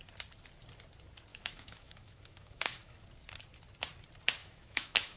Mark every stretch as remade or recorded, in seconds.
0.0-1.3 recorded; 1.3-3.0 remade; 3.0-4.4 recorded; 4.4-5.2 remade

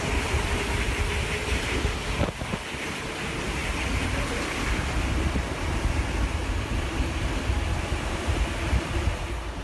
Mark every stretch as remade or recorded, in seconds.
0.0-9.6 recorded

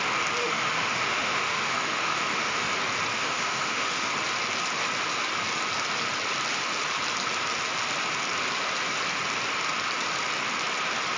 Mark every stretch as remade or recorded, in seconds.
0.0-0.4 recorded; 0.4-2.7 remade; 2.7-3.2 recorded; 3.2-4.1 remade; 4.1-11.2 recorded

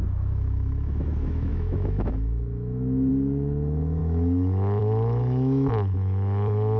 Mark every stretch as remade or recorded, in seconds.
0.0-6.8 remade

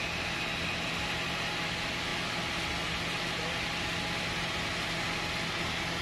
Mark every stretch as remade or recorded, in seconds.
0.0-6.0 recorded

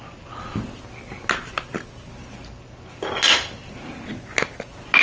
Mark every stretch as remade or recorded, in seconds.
0.0-5.0 recorded

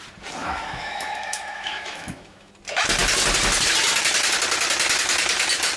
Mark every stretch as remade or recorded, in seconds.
0.0-0.4 recorded; 0.4-2.5 remade; 2.5-5.8 recorded